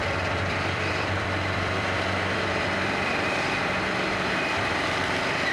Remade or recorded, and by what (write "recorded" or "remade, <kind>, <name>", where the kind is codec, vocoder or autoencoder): remade, vocoder, BigVGAN v2